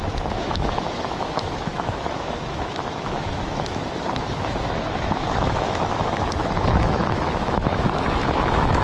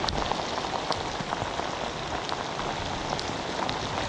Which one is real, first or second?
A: second